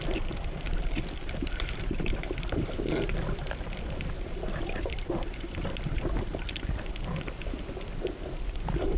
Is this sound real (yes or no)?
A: yes